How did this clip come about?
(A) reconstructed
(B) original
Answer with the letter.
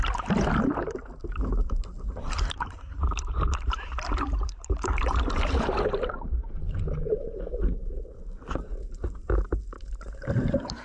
A